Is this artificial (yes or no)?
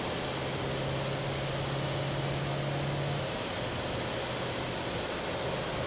no